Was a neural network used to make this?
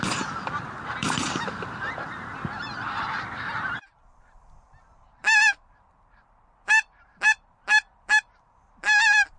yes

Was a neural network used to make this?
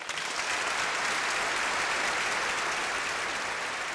no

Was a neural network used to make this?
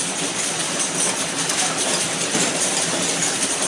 no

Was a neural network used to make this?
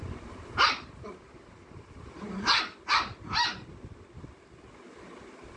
no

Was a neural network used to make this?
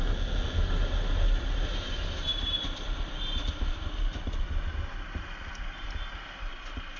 no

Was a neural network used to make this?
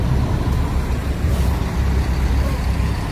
no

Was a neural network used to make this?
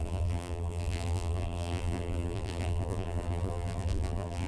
yes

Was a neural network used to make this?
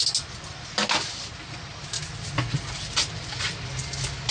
no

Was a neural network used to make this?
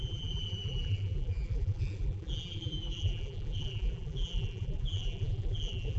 yes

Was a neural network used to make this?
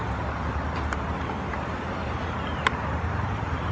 yes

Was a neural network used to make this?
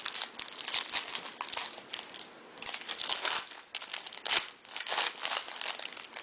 no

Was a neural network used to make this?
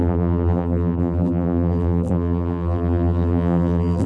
yes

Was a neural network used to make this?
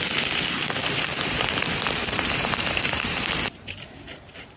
yes